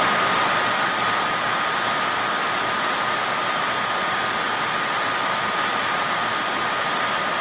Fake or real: real